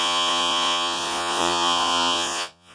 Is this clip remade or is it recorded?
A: remade